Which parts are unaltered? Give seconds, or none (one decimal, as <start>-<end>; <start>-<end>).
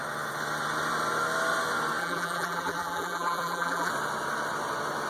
0.0-2.0; 3.9-5.1